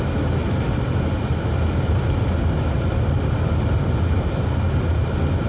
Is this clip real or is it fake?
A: real